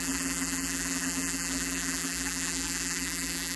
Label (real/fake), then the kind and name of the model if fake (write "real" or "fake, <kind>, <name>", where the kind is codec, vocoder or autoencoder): fake, vocoder, BigVGAN v2